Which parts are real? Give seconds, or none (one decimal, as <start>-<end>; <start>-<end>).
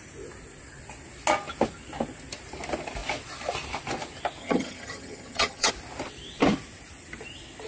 0.0-4.4; 5.7-7.7